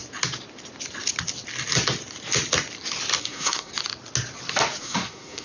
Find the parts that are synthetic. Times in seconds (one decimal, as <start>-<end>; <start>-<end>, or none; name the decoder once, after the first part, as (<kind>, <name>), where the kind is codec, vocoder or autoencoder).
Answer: 3.2-3.7 (codec, SNAC); 4.8-5.4